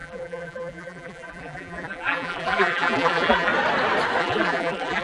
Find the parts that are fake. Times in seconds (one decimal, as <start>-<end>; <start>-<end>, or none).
0.0-3.5; 4.2-5.0